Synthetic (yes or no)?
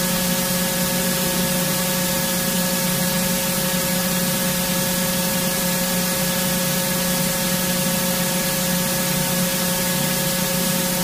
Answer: no